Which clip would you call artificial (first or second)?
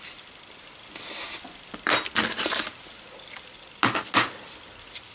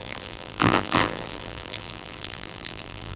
second